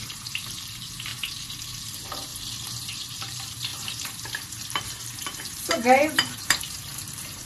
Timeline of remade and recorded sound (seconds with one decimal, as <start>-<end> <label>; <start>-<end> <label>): 0.0-2.3 remade; 2.3-2.9 recorded; 2.9-7.5 remade